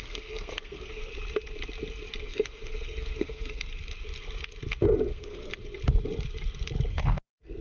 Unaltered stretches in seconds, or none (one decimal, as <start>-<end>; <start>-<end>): 1.1-2.2; 3.7-5.1; 5.5-6.9